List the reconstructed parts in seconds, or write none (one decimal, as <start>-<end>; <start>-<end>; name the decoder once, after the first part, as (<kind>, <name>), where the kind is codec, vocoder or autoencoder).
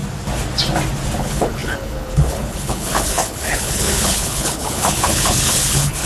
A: 1.2-6.1 (codec, HILCodec)